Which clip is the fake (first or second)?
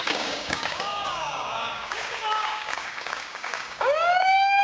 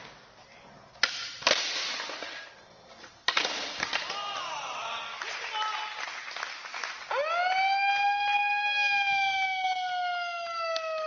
first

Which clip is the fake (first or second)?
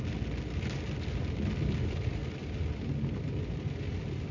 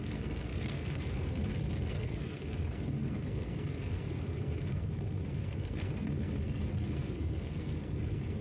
second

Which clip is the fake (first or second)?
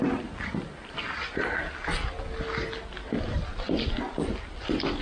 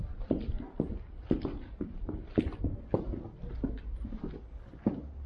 second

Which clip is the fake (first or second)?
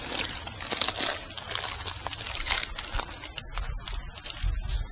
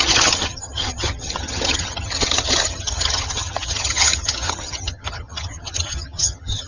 second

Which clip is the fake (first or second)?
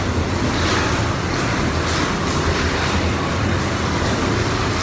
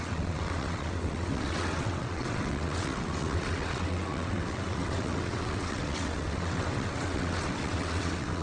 second